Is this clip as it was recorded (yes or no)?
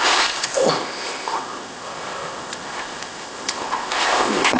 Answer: no